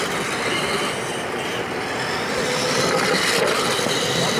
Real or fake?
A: real